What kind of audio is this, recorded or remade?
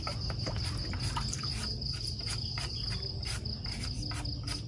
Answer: recorded